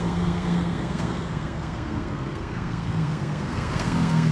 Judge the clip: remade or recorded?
remade